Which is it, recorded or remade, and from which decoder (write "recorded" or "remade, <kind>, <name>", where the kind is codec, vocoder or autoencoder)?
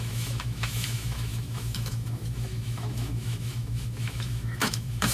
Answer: remade, autoencoder, DAC-VAE